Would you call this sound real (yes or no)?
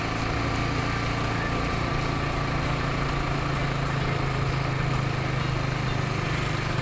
yes